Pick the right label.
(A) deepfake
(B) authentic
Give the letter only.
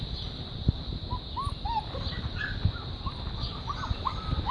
B